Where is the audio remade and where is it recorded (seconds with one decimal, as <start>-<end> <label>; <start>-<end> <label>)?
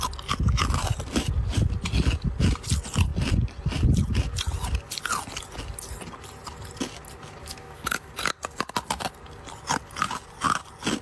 0.0-7.4 recorded; 7.4-8.1 remade; 8.1-11.0 recorded